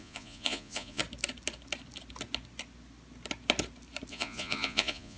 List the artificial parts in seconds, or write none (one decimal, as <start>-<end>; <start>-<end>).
0.0-1.0; 4.1-5.2